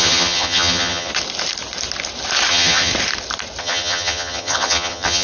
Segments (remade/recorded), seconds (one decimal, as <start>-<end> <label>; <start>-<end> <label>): 0.0-1.1 remade; 1.1-2.5 recorded; 2.5-2.9 remade; 2.9-3.6 recorded; 3.6-5.2 remade